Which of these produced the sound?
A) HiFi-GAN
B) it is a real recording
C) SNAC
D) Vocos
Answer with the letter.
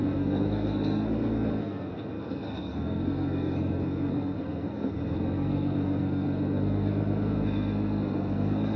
C